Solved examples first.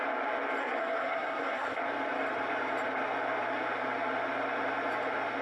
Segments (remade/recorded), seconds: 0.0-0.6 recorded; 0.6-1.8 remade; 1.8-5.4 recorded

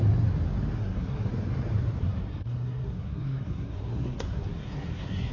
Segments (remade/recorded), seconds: 0.0-0.8 recorded; 0.8-1.3 remade; 1.3-2.0 recorded; 2.0-5.3 remade